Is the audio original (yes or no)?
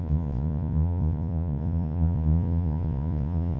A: no